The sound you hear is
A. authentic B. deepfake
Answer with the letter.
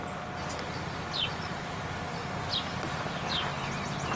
A